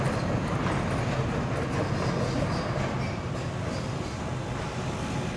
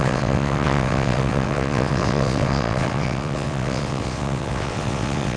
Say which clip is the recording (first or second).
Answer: first